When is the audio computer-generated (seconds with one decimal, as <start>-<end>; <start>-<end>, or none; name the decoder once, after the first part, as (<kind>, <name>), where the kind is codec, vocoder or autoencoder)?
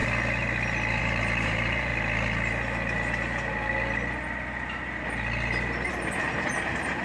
1.0-1.9 (vocoder, BigVGAN v2); 5.9-7.0